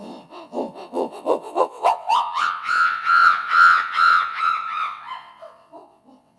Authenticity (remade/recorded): remade